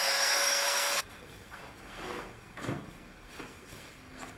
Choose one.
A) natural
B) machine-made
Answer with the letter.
B